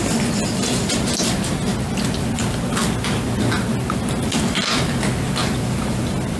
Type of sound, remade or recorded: recorded